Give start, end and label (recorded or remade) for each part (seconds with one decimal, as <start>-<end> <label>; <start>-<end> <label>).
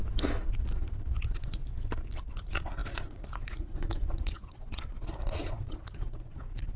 0.0-1.2 recorded; 1.2-1.6 remade; 1.6-2.3 recorded; 2.3-6.8 remade